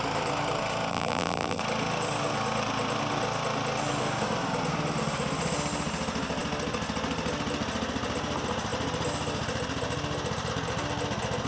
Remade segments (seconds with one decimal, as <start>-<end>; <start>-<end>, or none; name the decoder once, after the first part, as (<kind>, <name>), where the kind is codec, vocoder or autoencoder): 0.9-1.6 (vocoder, BigVGAN v2)